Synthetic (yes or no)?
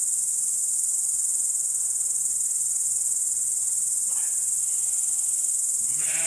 no